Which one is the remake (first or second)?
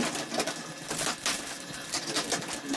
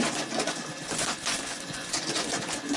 second